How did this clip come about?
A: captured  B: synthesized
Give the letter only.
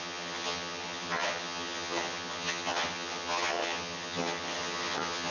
B